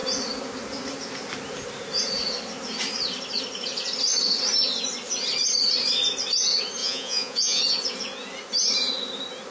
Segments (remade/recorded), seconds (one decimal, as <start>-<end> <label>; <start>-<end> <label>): 0.0-6.8 recorded; 6.8-7.6 remade; 7.6-9.5 recorded